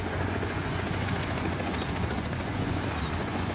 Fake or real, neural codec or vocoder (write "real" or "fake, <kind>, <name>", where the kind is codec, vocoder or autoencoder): fake, vocoder, Vocos